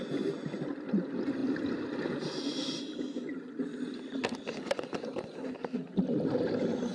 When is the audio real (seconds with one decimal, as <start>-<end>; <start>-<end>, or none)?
0.0-6.9